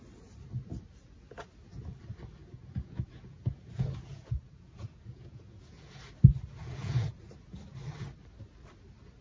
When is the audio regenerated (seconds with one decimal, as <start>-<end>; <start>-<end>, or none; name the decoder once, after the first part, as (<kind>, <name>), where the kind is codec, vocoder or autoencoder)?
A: 2.4-6.0 (vocoder, Vocos); 6.6-7.2